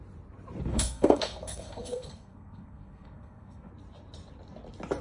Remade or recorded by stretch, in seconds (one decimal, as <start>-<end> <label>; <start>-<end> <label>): 0.0-0.7 recorded; 0.7-3.7 remade; 3.7-5.0 recorded